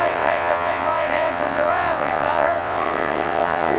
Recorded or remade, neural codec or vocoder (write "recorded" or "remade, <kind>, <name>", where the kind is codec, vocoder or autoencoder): remade, vocoder, WaveNeXt